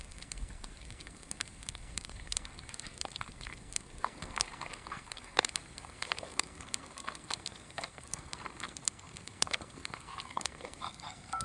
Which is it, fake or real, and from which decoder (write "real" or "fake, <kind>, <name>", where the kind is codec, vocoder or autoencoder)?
fake, codec, SNAC